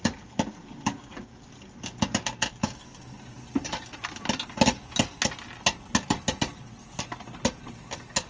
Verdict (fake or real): real